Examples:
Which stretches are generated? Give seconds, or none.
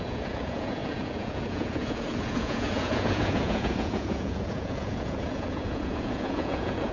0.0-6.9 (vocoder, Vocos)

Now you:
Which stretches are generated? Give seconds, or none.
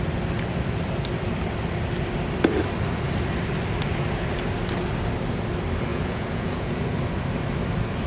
5.9-6.8 (vocoder, Vocos)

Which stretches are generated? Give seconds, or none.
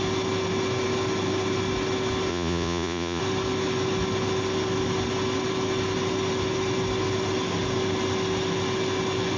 2.3-3.2 (vocoder, Vocos)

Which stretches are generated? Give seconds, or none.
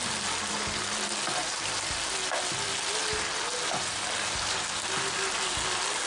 none